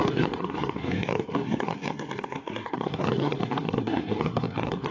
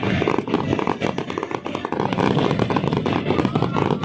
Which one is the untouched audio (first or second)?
second